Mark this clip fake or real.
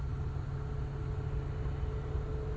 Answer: real